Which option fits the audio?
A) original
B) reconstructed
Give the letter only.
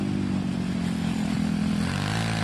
A